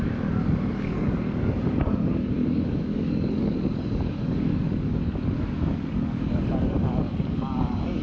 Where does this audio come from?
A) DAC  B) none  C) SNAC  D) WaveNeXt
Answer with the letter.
A